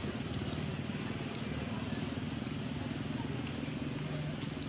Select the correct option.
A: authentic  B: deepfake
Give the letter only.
A